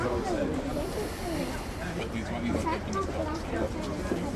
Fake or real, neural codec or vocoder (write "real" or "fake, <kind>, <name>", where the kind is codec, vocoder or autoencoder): real